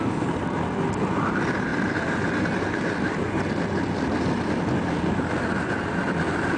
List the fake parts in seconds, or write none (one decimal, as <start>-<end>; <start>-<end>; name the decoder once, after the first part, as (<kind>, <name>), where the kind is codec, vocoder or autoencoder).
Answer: none